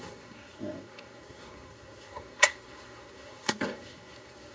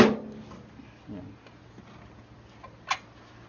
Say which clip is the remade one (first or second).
first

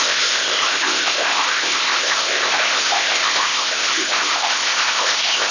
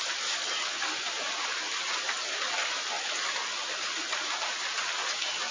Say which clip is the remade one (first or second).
first